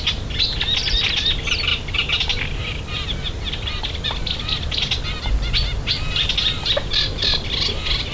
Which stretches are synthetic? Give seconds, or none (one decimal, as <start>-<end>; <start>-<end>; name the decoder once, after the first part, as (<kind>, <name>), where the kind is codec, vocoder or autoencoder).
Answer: none